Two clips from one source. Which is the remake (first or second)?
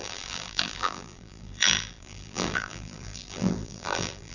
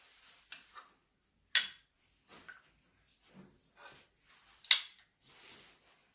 first